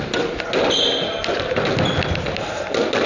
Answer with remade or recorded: recorded